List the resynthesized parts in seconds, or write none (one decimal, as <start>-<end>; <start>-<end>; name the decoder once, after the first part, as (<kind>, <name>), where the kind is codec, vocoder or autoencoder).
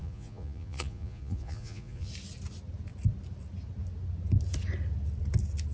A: 0.0-2.1 (vocoder, Vocos)